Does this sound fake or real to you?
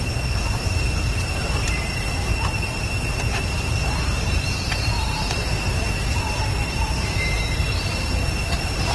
fake